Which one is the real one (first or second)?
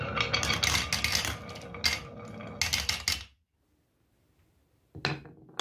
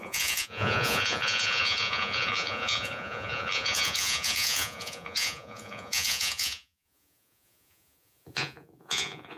first